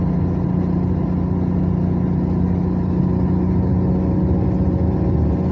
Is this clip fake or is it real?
real